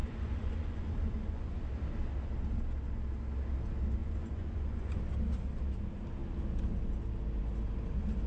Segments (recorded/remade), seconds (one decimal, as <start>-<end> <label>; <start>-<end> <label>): 0.0-1.6 remade; 1.6-4.0 recorded; 4.0-5.0 remade; 5.0-8.3 recorded